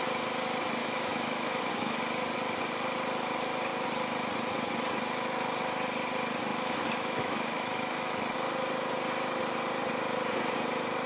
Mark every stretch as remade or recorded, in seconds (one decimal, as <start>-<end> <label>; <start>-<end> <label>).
0.0-0.8 recorded; 0.8-2.0 remade; 2.0-6.5 recorded; 6.5-8.2 remade; 8.2-11.1 recorded